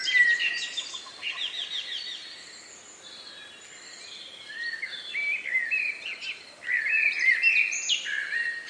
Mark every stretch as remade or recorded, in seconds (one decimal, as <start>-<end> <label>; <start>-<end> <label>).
0.0-0.5 remade; 0.5-8.7 recorded